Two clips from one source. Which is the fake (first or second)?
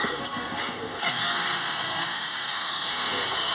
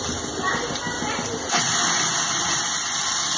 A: first